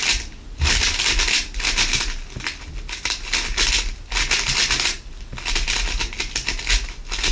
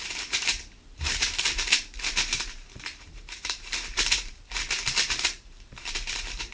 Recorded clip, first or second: first